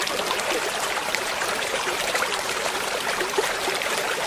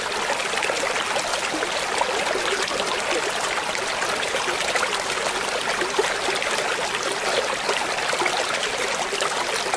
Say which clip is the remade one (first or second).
first